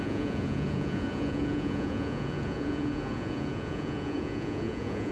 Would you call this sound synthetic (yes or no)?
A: yes